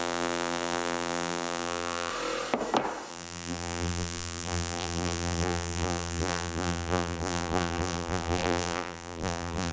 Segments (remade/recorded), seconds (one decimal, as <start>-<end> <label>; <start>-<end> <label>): 0.0-2.1 remade; 2.1-3.1 recorded; 3.1-9.7 remade